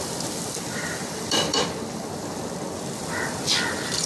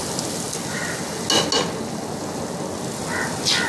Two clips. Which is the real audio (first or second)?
second